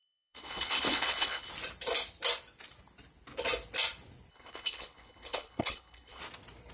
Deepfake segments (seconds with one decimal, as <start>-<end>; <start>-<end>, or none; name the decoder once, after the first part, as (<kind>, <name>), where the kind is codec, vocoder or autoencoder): 0.0-1.5 (codec, HILCodec); 4.3-6.2